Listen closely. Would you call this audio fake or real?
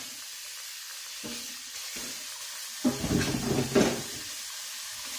real